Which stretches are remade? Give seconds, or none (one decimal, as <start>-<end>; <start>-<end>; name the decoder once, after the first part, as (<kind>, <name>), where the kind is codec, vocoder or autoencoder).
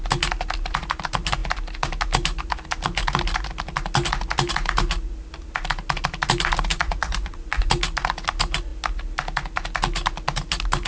6.7-7.7 (vocoder, Vocos)